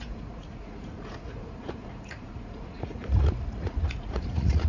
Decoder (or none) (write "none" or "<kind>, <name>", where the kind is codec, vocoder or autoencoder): vocoder, Vocos